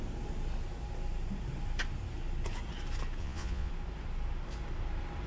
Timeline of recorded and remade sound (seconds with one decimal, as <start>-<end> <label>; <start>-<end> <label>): 0.0-3.2 recorded; 3.2-3.7 remade; 3.7-5.3 recorded